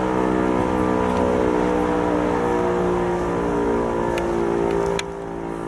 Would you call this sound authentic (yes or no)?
yes